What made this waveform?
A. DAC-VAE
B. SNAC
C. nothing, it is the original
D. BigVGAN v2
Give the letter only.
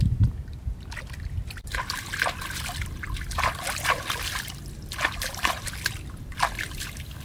C